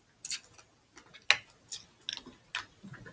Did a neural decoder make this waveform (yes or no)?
no